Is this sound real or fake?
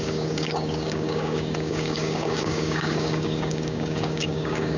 fake